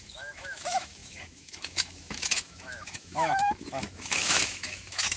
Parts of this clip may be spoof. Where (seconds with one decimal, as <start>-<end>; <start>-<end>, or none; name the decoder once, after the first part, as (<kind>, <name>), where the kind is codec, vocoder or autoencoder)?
0.0-5.2 (autoencoder, DAC-VAE)